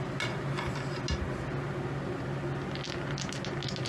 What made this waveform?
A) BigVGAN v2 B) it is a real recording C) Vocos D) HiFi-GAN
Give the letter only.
B